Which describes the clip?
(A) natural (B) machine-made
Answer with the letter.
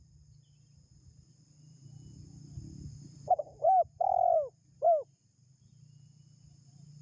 A